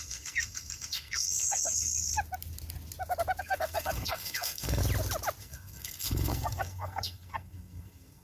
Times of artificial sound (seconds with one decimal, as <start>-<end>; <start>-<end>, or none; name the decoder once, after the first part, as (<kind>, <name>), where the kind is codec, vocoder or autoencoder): 0.0-2.1 (codec, SNAC); 3.4-4.8; 5.4-8.2